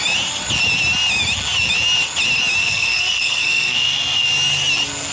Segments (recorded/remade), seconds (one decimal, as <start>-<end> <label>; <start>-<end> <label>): 0.0-2.6 recorded; 2.6-4.3 remade; 4.3-5.1 recorded